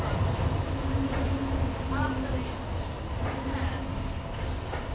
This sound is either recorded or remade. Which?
recorded